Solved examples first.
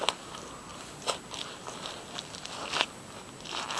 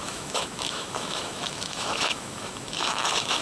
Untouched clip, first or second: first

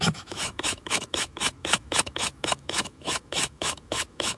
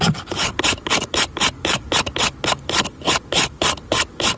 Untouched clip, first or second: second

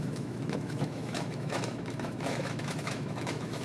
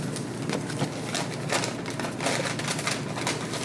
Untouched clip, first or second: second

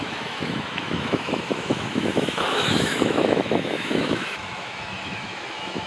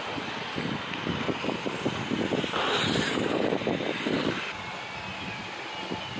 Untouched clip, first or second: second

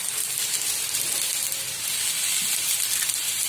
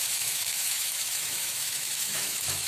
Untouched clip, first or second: first